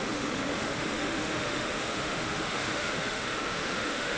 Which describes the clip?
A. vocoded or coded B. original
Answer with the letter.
A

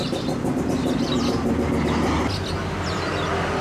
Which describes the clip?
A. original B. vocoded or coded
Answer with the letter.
A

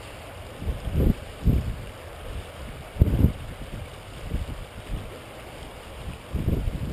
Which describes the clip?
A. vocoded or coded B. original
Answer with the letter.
B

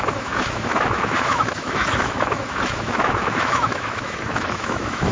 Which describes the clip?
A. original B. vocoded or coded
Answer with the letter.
B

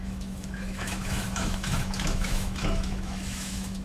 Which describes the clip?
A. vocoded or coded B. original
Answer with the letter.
A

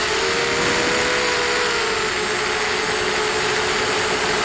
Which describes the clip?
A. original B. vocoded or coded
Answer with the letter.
A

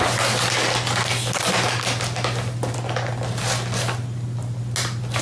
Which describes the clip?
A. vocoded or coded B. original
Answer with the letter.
B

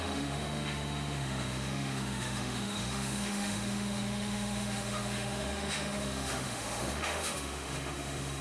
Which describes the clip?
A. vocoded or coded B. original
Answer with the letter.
A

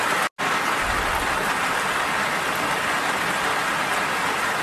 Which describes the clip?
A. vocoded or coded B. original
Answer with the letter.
B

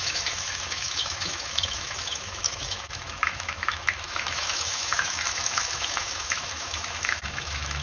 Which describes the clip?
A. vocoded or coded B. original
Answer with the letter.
A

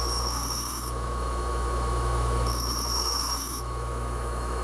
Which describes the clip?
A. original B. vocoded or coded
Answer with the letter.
B